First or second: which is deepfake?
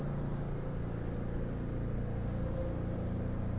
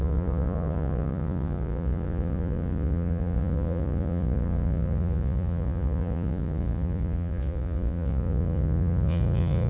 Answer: second